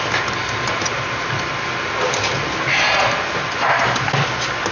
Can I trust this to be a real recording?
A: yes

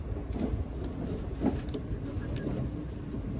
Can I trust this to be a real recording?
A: yes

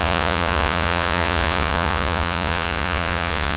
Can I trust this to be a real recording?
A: no